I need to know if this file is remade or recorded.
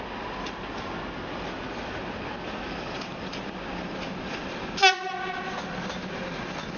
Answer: recorded